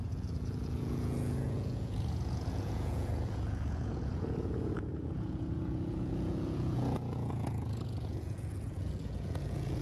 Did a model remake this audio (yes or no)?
yes